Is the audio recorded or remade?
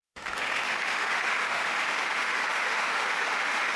remade